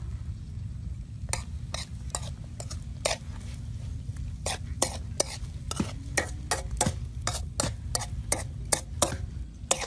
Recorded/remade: recorded